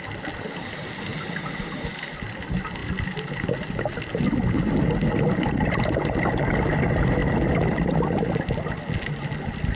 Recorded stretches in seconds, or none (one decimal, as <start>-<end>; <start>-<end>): 0.0-9.7